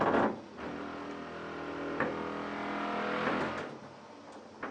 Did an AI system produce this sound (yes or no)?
no